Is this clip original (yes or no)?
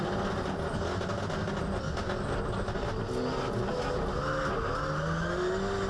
yes